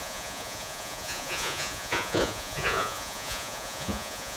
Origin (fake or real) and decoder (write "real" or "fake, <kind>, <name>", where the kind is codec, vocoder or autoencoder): fake, vocoder, Vocos